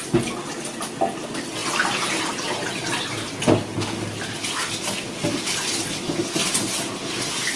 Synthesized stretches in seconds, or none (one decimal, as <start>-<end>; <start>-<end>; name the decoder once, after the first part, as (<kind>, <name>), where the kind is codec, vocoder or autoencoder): none